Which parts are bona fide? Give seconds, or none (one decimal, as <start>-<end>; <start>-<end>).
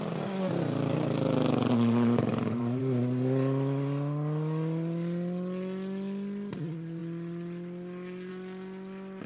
0.0-2.3; 2.8-9.3